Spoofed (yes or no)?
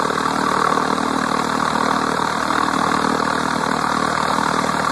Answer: yes